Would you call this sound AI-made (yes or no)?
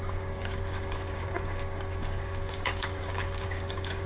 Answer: yes